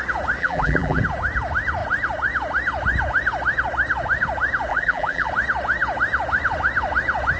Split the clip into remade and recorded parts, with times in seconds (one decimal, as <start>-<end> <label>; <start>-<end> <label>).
0.0-0.4 recorded; 0.4-1.0 remade; 1.0-4.7 recorded; 4.7-5.3 remade; 5.3-7.4 recorded